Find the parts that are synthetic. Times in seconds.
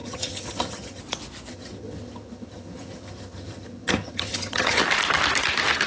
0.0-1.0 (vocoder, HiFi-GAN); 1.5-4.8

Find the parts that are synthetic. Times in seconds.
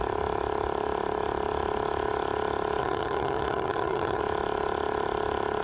2.8-4.2 (vocoder, HiFi-GAN)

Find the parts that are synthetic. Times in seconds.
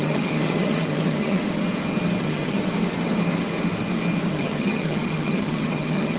0.0-1.4 (vocoder, HiFi-GAN); 2.2-2.6; 4.3-6.2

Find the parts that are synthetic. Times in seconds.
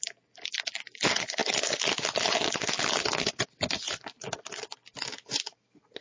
none